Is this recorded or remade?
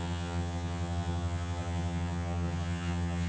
remade